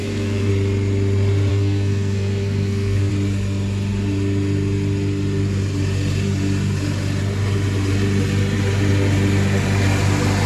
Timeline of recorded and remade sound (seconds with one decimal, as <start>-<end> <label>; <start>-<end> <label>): 0.0-0.5 remade; 0.5-1.5 recorded; 1.5-3.1 remade; 3.1-10.5 recorded